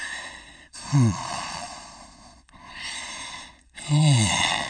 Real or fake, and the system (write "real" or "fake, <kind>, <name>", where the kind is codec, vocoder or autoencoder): fake, vocoder, Vocos